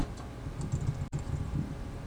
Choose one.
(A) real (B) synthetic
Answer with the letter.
A